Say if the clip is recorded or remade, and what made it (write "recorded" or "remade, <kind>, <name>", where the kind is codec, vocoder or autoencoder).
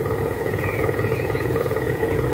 remade, vocoder, Vocos